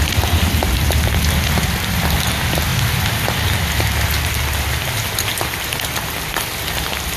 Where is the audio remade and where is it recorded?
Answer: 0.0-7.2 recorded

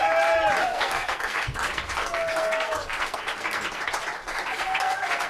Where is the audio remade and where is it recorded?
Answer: 0.0-0.6 recorded; 0.6-3.8 remade; 3.8-4.2 recorded; 4.2-5.3 remade

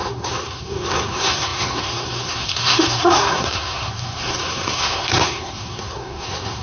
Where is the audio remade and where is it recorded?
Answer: 0.0-6.6 remade

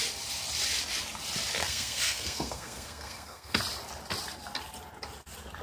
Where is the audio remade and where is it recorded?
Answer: 0.0-1.6 recorded; 1.6-3.6 remade; 3.6-5.6 recorded

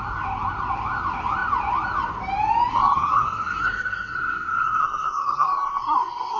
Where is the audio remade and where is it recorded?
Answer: 0.0-2.7 recorded; 2.7-6.4 remade

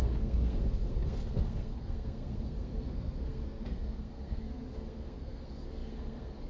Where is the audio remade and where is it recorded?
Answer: 0.0-6.5 remade